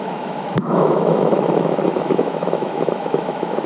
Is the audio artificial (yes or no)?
yes